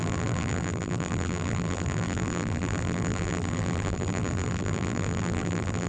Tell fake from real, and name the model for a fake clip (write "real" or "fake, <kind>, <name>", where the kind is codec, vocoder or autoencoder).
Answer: fake, vocoder, BigVGAN v2